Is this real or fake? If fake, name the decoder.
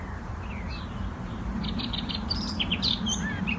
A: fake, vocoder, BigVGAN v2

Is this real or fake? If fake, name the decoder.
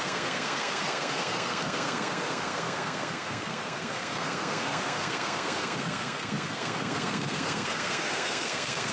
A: fake, codec, SNAC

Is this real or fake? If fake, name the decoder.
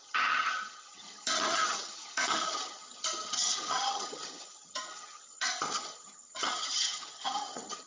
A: fake, vocoder, HiFi-GAN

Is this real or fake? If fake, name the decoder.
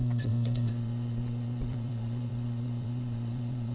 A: fake, vocoder, WaveNeXt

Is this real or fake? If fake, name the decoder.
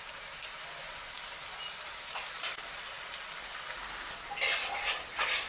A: real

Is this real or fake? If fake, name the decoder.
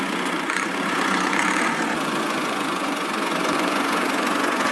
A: fake, vocoder, Vocos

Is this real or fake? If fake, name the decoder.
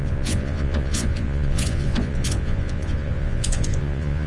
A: fake, vocoder, Vocos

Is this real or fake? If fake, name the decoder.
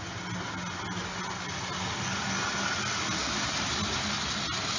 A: real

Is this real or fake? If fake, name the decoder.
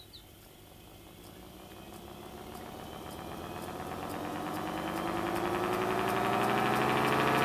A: real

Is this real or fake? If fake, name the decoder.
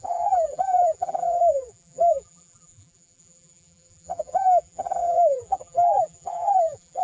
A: fake, vocoder, BigVGAN v2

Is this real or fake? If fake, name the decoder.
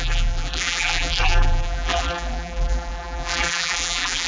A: fake, vocoder, BigVGAN v2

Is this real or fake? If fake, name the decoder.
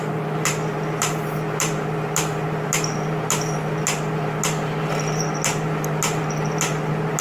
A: real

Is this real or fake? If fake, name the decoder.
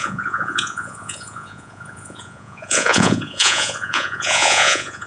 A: fake, vocoder, Vocos